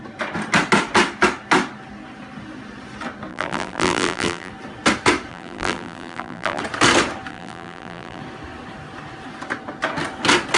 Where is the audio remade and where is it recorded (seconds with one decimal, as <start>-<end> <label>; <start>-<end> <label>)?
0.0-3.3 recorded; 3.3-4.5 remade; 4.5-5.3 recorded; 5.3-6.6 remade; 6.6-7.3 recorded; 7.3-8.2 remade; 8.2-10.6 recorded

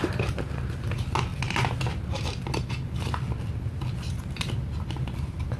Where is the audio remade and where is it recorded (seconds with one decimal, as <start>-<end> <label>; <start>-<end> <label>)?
0.0-5.6 recorded

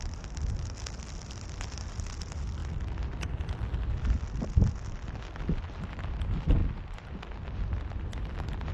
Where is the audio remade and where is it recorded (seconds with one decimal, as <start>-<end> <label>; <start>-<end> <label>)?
0.0-8.7 recorded

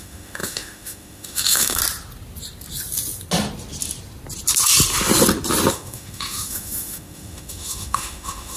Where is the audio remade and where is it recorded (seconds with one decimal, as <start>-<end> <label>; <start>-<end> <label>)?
0.0-1.8 remade; 1.8-5.7 recorded; 5.7-8.6 remade

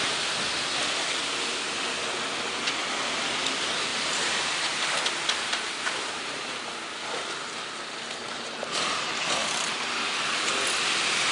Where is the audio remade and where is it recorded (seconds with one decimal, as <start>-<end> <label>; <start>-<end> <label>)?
0.0-3.9 recorded; 3.9-5.0 remade; 5.0-5.5 recorded; 5.5-6.6 remade; 6.6-8.2 recorded; 8.2-10.5 remade; 10.5-11.3 recorded

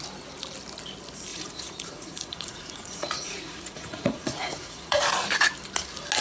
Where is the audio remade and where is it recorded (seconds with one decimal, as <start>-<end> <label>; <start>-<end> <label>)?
0.0-1.3 recorded; 1.3-5.0 remade; 5.0-6.2 recorded

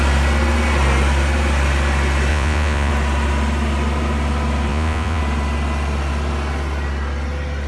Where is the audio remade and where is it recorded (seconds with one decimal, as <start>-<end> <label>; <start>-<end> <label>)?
0.0-2.3 recorded; 2.3-2.9 remade; 2.9-4.7 recorded; 4.7-5.2 remade; 5.2-7.7 recorded